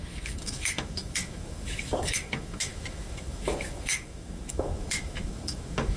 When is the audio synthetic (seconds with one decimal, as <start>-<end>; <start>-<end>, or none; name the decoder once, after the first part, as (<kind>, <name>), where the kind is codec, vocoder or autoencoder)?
0.0-6.0 (autoencoder, DAC-VAE)